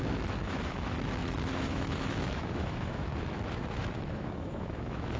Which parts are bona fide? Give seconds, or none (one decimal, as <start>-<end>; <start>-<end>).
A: 3.1-3.6